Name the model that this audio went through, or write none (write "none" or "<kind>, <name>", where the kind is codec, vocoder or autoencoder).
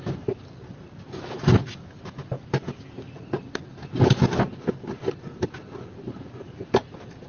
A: none